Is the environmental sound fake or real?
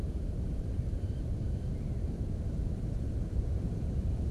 fake